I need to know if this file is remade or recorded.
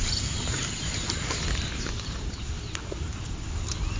recorded